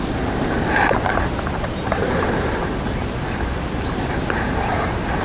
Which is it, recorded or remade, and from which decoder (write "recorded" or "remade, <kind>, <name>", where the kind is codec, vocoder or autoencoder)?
recorded